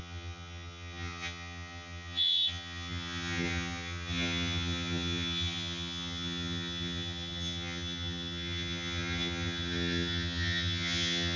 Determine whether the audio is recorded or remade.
remade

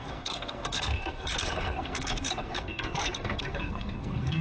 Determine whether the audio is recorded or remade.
remade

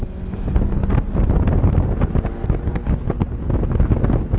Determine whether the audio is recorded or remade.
recorded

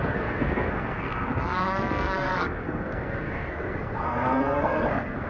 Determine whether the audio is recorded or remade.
remade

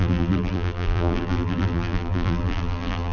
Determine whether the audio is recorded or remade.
remade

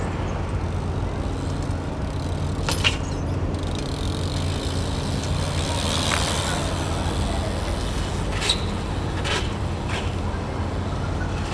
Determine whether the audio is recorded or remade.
recorded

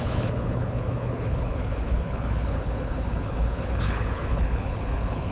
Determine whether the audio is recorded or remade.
remade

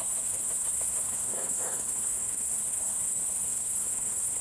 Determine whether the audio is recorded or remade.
remade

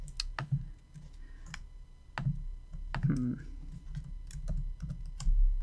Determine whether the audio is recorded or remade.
recorded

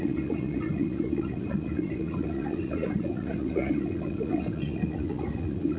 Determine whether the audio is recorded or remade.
remade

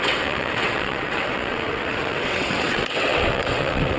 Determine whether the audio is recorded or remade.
remade